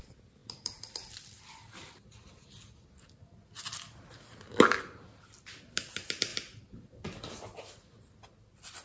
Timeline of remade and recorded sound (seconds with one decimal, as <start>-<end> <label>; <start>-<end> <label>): 0.0-8.8 recorded

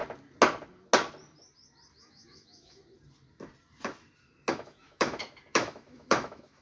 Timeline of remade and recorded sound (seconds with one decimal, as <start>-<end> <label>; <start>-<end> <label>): 0.0-2.0 recorded; 2.0-2.8 remade; 2.8-4.5 recorded; 4.5-6.6 remade

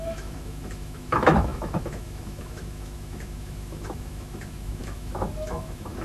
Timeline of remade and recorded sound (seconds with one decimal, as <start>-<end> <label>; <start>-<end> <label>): 0.0-6.0 remade

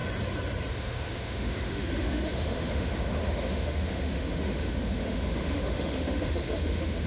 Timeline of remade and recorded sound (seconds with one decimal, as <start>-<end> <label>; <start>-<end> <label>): 0.0-0.7 recorded; 0.7-7.1 remade

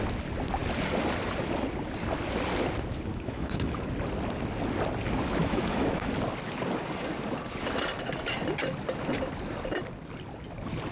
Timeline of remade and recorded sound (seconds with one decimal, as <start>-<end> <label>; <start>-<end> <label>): 0.0-3.1 recorded; 3.1-3.8 remade; 3.8-5.4 recorded; 5.4-6.1 remade; 6.1-10.9 recorded

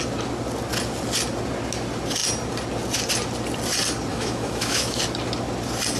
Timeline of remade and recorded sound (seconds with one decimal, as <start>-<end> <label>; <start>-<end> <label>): 0.0-4.1 recorded; 4.1-5.0 remade; 5.0-6.0 recorded

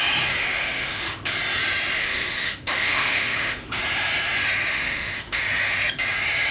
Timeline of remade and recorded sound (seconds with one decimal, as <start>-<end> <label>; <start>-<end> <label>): 0.0-0.4 recorded; 0.4-1.4 remade; 1.4-1.9 recorded; 1.9-3.8 remade; 3.8-4.7 recorded; 4.7-5.4 remade; 5.4-6.5 recorded